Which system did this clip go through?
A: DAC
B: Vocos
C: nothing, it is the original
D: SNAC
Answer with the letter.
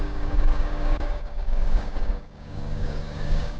A